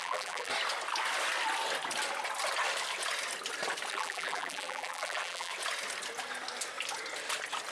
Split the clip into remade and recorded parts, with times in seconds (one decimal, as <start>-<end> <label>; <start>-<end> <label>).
0.0-0.5 remade; 0.5-3.9 recorded; 3.9-5.5 remade; 5.5-7.7 recorded